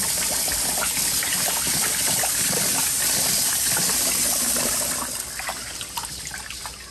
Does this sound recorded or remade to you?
recorded